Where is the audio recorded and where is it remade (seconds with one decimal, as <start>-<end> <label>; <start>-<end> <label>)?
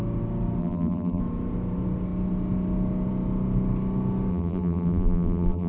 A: 0.0-0.6 recorded; 0.6-1.2 remade; 1.2-4.3 recorded; 4.3-5.7 remade